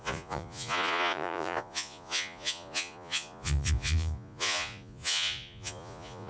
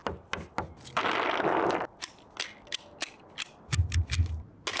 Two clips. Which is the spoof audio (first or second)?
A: first